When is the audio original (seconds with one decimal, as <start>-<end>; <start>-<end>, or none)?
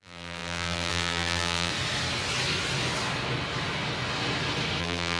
1.7-4.8